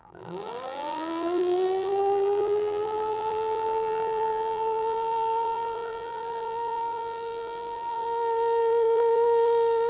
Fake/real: fake